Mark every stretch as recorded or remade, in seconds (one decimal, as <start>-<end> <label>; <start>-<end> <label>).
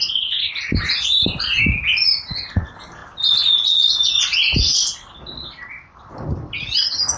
0.0-7.2 recorded